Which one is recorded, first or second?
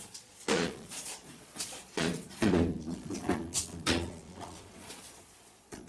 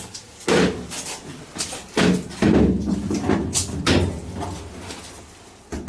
second